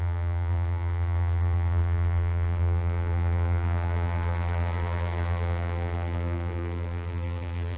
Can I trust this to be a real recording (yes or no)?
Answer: no